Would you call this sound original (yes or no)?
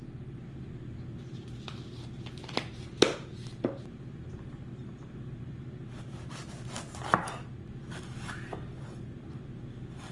yes